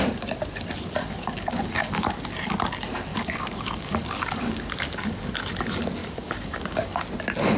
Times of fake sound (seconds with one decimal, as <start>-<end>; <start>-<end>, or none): 1.0-2.2; 3.1-5.3; 6.0-7.0